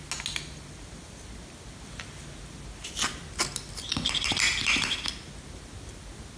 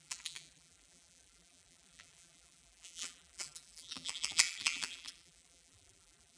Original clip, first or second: first